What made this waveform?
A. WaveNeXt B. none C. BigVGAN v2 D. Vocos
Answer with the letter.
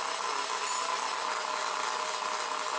B